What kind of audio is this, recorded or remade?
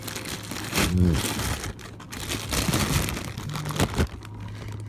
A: recorded